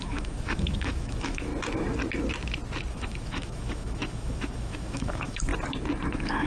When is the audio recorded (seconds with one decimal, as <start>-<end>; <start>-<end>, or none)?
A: 1.5-2.9; 5.5-6.1